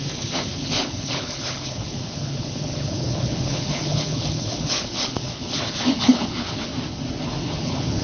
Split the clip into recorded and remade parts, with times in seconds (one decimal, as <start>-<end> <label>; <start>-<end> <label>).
0.0-6.7 remade; 6.7-7.4 recorded; 7.4-8.0 remade